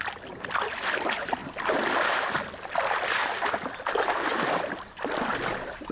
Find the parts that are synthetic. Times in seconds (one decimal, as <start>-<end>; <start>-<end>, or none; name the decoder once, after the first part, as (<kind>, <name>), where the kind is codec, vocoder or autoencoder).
none